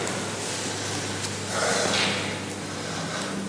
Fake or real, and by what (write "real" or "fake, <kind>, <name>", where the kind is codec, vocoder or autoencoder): real